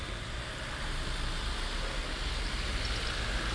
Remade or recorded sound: recorded